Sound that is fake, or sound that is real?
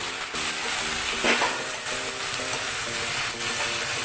real